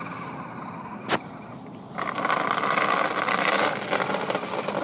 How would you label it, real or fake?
real